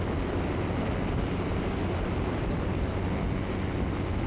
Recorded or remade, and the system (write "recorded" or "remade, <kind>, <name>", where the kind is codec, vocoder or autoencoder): recorded